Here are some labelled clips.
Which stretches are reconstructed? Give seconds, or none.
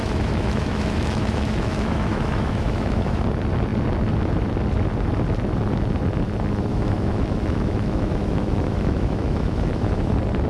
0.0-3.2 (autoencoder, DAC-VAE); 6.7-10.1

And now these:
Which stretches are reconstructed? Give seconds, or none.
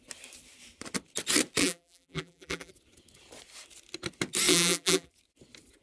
1.6-2.7 (vocoder, BigVGAN v2); 4.5-5.1